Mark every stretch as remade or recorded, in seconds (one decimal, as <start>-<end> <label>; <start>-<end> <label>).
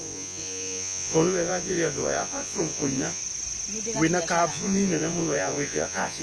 0.0-3.2 remade; 3.2-4.5 recorded; 4.5-6.2 remade